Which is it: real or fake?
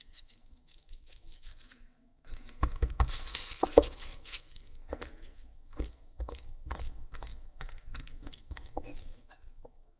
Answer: fake